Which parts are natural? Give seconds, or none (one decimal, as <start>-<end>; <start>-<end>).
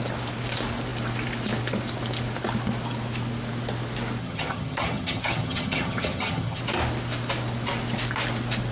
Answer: 0.0-4.2; 6.6-8.7